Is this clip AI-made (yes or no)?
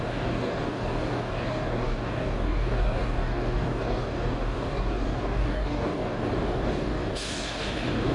yes